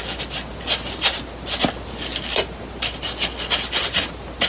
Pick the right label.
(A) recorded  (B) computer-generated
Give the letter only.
A